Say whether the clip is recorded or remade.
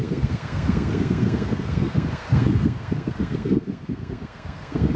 remade